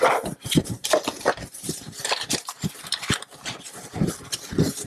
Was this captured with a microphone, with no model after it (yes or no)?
no